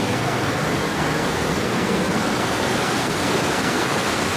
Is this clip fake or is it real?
fake